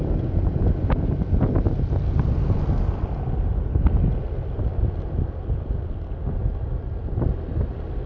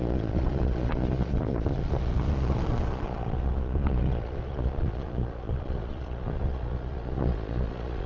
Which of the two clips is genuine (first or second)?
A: first